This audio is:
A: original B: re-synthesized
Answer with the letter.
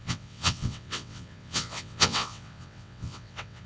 B